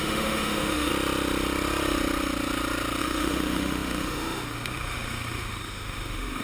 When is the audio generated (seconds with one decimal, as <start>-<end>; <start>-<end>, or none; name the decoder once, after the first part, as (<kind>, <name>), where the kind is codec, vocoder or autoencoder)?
0.0-0.9 (autoencoder, DAC-VAE); 3.0-6.4